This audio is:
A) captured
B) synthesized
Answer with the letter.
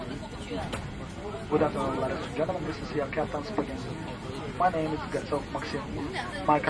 A